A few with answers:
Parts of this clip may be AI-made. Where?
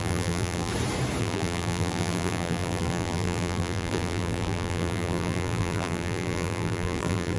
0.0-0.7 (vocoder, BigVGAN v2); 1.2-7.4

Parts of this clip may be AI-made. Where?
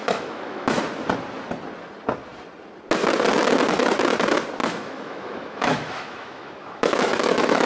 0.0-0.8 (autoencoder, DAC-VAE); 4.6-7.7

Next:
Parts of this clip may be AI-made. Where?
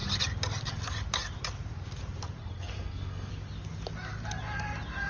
2.4-3.3 (codec, SNAC)